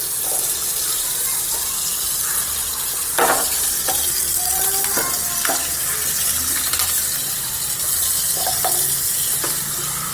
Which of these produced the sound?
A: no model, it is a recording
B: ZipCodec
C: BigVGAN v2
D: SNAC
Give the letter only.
A